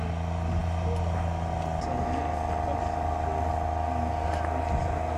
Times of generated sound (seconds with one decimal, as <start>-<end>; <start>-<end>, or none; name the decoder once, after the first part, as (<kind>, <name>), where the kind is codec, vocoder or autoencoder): none